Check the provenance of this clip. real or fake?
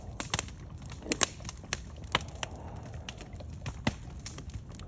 real